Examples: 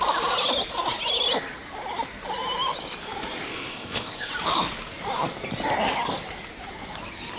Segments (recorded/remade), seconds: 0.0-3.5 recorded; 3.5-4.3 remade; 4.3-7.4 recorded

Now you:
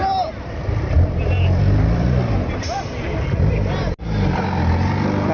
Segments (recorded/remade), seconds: 0.0-3.0 remade; 3.0-5.3 recorded

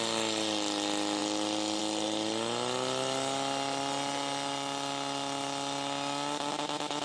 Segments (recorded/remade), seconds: 0.0-7.0 recorded

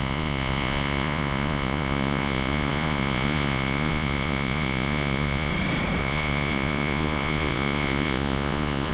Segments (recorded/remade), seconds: 0.0-5.5 remade; 5.5-6.0 recorded; 6.0-8.9 remade

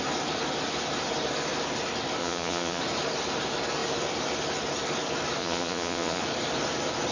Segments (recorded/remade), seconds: 0.0-2.2 recorded; 2.2-2.8 remade; 2.8-5.4 recorded; 5.4-6.2 remade; 6.2-7.1 recorded